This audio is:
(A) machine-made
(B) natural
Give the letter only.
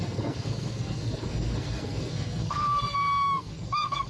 A